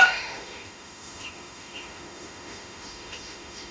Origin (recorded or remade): remade